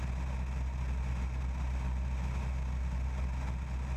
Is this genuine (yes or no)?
yes